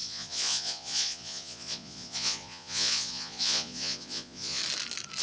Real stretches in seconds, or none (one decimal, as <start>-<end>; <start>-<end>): 4.6-5.2